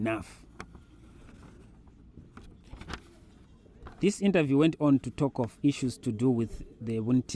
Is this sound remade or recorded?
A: recorded